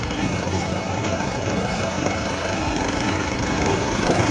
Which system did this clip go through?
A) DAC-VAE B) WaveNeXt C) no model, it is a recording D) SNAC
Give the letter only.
D